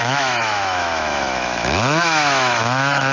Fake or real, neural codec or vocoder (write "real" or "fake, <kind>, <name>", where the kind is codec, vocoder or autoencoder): fake, autoencoder, DAC-VAE